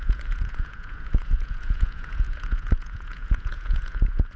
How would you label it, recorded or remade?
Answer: remade